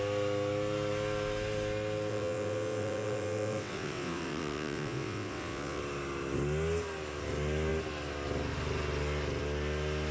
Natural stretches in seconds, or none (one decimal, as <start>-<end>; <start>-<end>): 0.0-2.1; 5.8-10.1